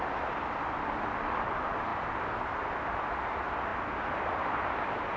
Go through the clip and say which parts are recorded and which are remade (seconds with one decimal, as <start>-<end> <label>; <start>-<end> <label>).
0.0-3.7 remade; 3.7-4.8 recorded; 4.8-5.2 remade